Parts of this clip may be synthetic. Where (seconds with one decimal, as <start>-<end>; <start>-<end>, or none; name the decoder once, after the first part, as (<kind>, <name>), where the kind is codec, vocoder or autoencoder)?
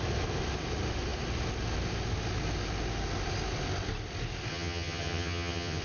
4.5-5.8 (vocoder, HiFi-GAN)